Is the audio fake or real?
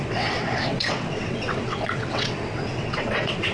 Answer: fake